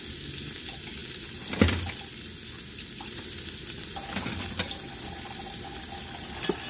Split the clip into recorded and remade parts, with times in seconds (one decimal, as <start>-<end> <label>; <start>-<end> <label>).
0.0-6.7 recorded